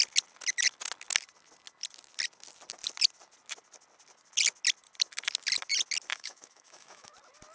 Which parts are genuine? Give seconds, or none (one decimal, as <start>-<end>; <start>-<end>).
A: 0.0-6.1; 7.1-7.5